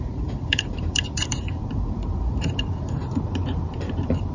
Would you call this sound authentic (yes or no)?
no